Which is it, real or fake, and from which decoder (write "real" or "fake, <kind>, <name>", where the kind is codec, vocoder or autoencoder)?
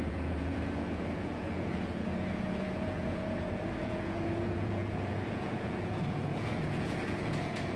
fake, vocoder, Vocos